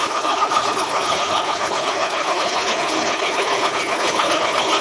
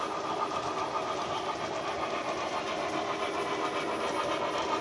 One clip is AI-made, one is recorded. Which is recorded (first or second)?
second